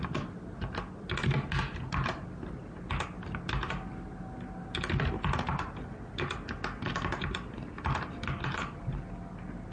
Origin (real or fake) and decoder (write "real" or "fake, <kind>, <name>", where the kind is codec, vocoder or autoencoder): real